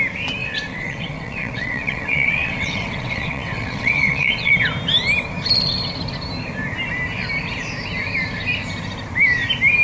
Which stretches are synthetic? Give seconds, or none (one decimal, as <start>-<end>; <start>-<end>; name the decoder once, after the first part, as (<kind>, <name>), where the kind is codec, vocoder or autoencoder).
0.4-4.5 (vocoder, WaveNeXt)